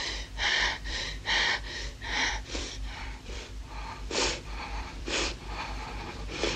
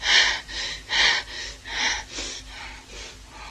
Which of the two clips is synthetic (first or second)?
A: first